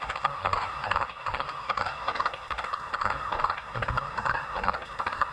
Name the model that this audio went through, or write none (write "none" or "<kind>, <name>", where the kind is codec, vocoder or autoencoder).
codec, SNAC